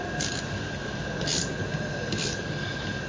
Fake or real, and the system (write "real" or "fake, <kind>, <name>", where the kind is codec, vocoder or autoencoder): real